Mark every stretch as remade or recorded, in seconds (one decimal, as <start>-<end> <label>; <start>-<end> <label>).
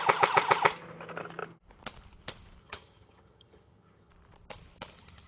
0.0-2.6 recorded; 2.6-4.1 remade; 4.1-5.3 recorded